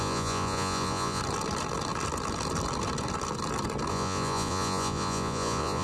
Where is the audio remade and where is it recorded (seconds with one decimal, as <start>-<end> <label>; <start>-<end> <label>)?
0.0-1.2 remade; 1.2-3.9 recorded; 3.9-5.8 remade